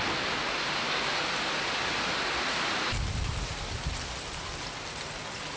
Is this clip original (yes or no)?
yes